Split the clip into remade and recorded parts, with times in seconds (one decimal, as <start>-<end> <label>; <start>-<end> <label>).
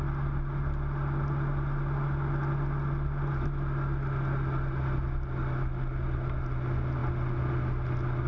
0.0-8.3 recorded